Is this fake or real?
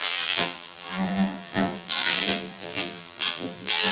fake